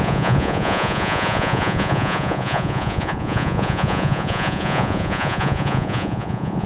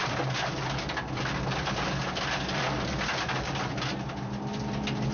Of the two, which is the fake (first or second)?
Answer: first